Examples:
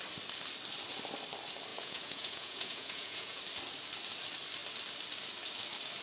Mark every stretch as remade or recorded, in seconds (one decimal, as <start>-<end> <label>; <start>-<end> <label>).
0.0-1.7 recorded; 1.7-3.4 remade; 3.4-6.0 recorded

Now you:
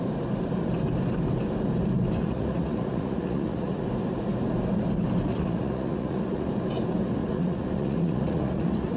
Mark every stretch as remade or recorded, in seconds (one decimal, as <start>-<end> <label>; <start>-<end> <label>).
0.0-2.2 recorded; 2.2-3.8 remade; 3.8-5.3 recorded; 5.3-6.5 remade; 6.5-7.2 recorded; 7.2-9.0 remade

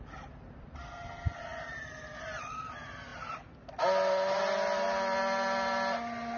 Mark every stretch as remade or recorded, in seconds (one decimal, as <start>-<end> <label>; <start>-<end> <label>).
0.0-6.4 recorded

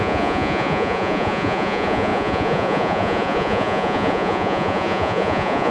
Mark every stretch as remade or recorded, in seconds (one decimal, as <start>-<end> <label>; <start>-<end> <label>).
0.0-5.7 remade

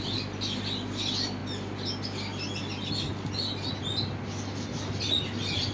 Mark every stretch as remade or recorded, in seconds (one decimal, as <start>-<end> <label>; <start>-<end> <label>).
0.0-5.7 recorded